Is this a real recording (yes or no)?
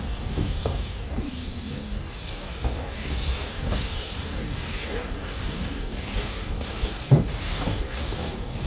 no